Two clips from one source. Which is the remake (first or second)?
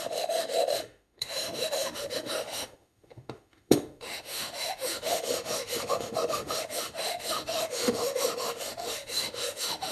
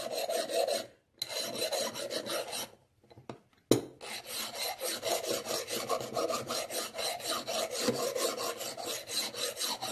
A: first